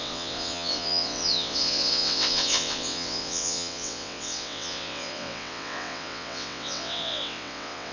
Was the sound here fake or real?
fake